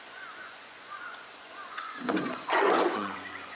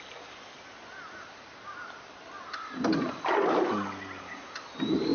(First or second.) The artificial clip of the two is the first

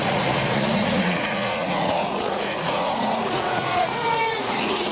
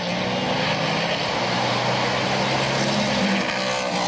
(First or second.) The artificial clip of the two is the first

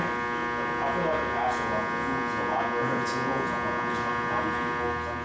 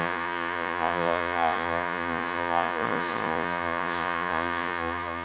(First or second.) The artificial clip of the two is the second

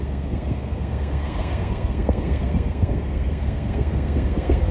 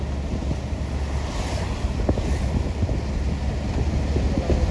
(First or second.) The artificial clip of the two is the first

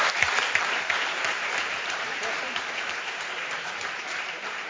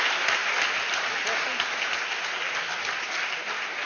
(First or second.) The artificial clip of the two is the first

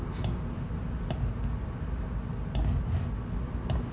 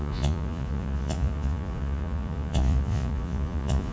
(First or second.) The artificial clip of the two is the second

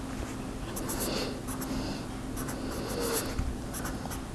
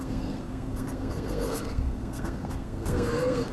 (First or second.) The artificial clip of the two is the second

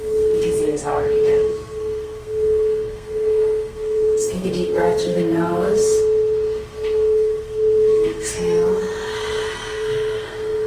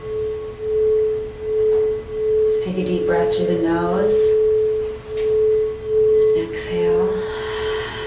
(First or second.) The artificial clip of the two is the first